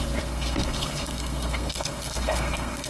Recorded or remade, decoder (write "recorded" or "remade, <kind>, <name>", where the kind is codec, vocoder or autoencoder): remade, codec, SNAC